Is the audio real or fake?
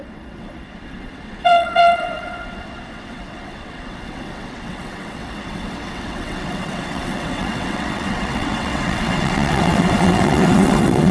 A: fake